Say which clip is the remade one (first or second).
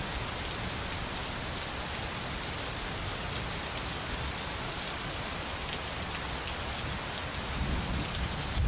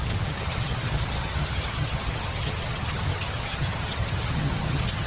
second